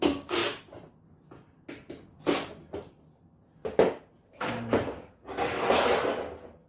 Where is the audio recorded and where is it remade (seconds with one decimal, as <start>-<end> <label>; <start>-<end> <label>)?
0.0-6.7 recorded